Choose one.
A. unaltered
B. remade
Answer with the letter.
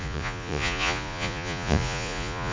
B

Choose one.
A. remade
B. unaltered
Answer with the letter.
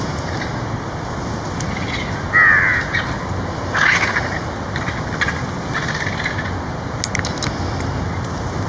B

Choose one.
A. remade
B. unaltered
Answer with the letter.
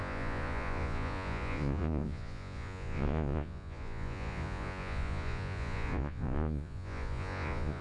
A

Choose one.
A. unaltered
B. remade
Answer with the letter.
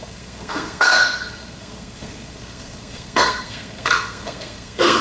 B